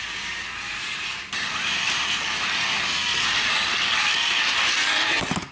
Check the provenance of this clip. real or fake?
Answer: real